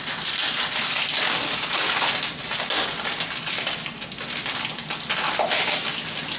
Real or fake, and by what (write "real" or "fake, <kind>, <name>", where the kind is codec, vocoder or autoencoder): real